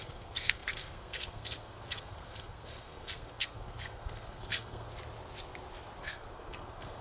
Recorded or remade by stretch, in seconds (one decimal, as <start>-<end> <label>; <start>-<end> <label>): 0.0-4.9 remade; 4.9-6.0 recorded; 6.0-7.0 remade

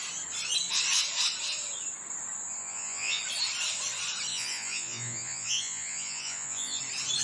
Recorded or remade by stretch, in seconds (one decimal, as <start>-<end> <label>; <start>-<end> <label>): 0.0-2.6 recorded; 2.6-3.2 remade; 3.2-4.3 recorded; 4.3-6.8 remade; 6.8-7.2 recorded

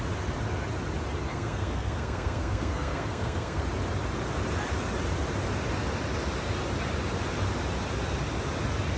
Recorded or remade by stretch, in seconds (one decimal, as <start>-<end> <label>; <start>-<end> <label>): 0.0-1.3 recorded; 1.3-3.6 remade; 3.6-9.0 recorded